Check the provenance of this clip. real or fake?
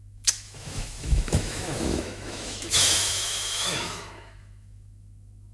fake